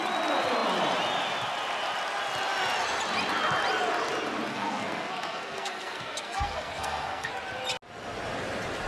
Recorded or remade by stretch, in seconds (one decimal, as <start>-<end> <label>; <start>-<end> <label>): 0.0-4.5 recorded; 4.5-7.3 remade; 7.3-8.9 recorded